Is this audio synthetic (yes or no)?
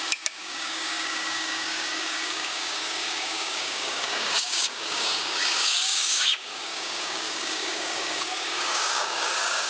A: yes